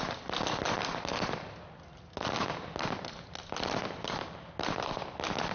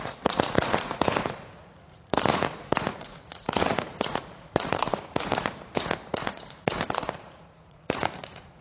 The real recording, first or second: first